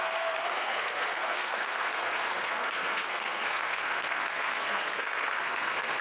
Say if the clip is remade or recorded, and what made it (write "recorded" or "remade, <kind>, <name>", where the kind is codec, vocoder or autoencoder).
remade, codec, SNAC